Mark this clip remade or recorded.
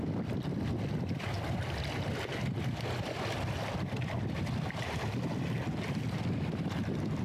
recorded